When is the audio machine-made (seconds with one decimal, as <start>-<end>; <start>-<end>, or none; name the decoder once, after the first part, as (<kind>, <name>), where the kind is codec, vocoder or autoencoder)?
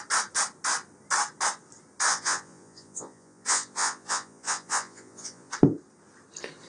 2.1-5.5 (vocoder, Vocos)